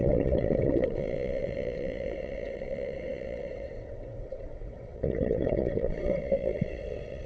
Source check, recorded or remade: remade